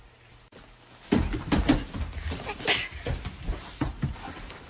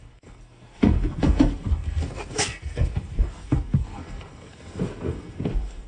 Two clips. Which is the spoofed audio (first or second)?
second